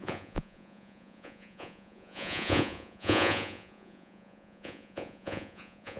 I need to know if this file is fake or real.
fake